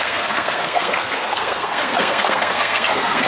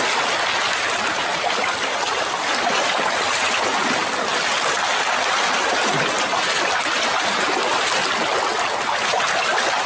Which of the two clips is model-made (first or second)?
first